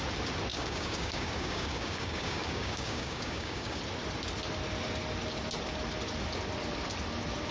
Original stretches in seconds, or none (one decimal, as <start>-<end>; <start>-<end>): 0.0-0.5; 3.8-7.5